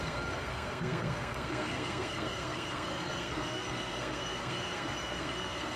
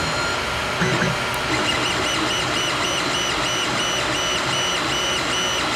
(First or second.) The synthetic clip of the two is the first